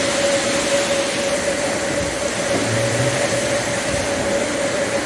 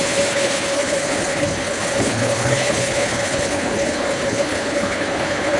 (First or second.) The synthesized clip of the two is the second